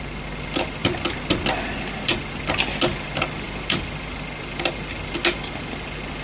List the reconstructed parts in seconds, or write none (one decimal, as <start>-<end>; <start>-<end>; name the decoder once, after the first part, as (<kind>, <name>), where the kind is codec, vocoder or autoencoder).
none